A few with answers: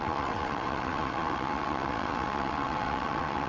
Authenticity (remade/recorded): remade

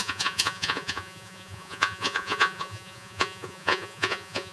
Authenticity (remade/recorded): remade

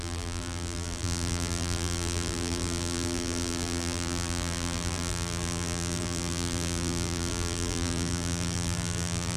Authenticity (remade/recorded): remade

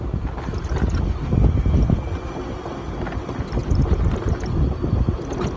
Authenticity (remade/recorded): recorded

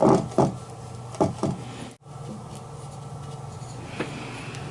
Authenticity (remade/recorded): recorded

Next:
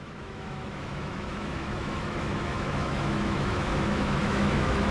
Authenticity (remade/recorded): remade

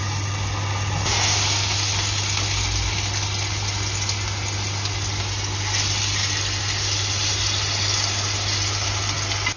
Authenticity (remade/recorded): recorded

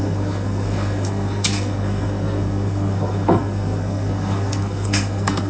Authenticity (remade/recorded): remade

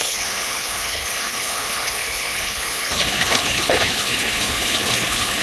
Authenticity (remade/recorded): remade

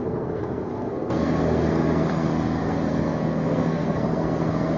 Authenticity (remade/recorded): remade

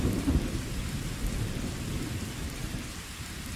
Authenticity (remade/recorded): recorded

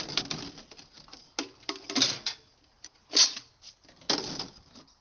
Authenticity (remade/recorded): recorded